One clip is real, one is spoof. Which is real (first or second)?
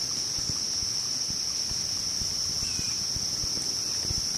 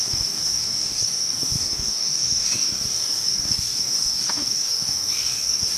first